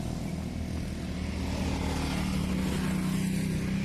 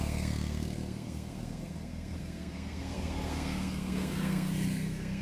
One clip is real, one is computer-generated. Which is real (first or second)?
first